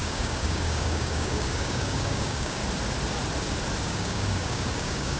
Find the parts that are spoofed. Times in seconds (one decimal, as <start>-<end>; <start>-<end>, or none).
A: 0.0-2.6; 3.8-5.2